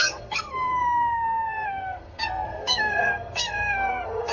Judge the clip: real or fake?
fake